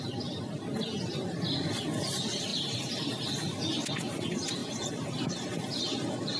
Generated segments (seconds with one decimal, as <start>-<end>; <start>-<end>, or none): 2.5-3.3; 4.6-5.8